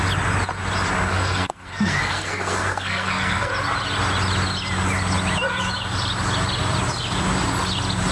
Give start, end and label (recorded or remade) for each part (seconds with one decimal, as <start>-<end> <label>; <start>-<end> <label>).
0.0-1.1 recorded; 1.1-3.5 remade; 3.5-8.1 recorded